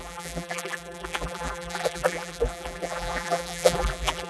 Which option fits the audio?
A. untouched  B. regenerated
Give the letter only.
B